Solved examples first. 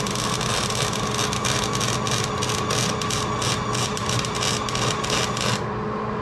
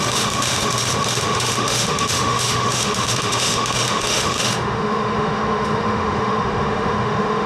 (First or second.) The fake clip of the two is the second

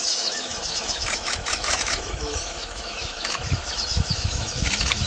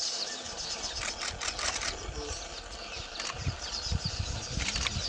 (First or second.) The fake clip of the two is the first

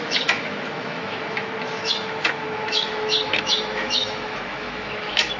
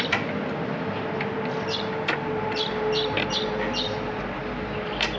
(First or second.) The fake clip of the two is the first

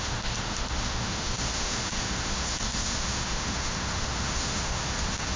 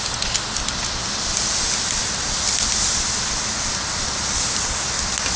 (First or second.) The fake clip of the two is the first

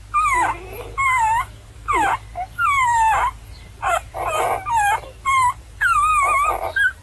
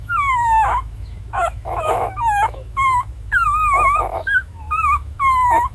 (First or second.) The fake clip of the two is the second